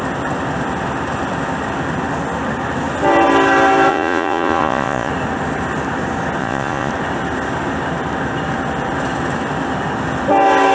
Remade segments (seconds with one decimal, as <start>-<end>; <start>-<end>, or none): 3.9-5.1; 6.4-6.9